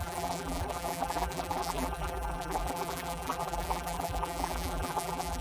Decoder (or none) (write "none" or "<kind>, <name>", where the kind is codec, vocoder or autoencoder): vocoder, BigVGAN v2